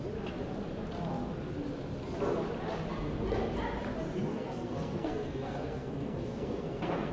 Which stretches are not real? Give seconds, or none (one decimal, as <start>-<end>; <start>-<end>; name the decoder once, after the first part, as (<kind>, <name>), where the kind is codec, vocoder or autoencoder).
4.3-7.1 (codec, SNAC)